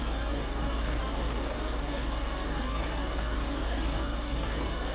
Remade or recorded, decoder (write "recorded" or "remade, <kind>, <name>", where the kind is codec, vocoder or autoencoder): remade, codec, DAC